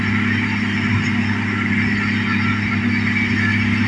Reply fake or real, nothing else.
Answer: real